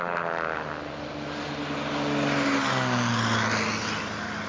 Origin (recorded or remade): recorded